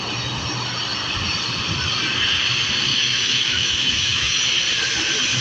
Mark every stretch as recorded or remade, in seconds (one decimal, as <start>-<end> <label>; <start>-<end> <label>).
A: 0.0-2.9 recorded; 2.9-4.4 remade; 4.4-5.4 recorded